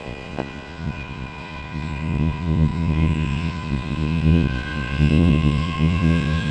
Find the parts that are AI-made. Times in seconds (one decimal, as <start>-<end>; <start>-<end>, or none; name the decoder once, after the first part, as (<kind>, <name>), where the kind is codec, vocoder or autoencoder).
0.0-6.5 (vocoder, Vocos)